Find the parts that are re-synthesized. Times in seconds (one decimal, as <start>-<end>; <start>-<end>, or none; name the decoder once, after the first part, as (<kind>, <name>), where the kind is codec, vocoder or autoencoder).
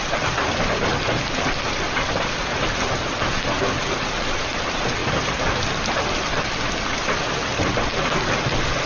none